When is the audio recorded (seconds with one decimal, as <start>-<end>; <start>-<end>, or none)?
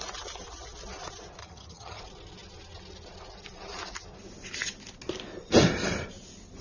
0.0-1.4; 2.0-6.6